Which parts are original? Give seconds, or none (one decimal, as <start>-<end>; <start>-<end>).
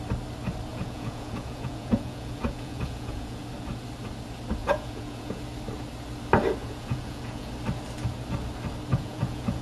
0.0-0.7; 3.4-4.6; 5.4-6.6; 7.5-8.9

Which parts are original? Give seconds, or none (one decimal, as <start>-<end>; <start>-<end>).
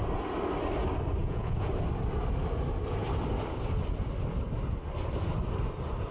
0.0-1.2; 1.7-6.1